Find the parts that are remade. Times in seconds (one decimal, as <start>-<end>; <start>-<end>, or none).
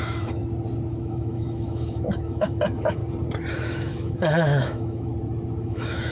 0.0-0.4; 0.9-3.0; 3.5-5.1; 5.6-6.1